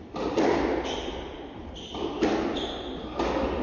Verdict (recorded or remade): recorded